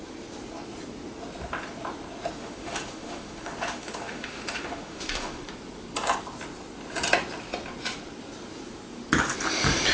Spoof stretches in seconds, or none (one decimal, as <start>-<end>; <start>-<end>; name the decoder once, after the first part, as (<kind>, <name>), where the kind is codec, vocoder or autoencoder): 2.4-5.5 (autoencoder, DAC-VAE)